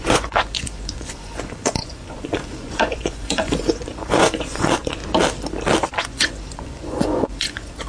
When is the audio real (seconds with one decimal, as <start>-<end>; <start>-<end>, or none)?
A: 5.0-6.0